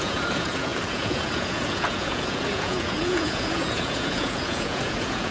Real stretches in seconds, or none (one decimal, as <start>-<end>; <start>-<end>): none